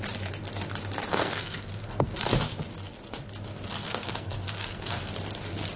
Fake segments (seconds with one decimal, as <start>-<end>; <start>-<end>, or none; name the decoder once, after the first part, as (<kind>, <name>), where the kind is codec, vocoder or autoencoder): 1.1-2.3 (codec, SNAC); 3.8-5.1